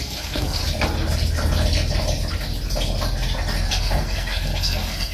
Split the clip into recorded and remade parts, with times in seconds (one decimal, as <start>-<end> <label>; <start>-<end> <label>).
0.0-0.6 remade; 0.6-3.7 recorded; 3.7-5.1 remade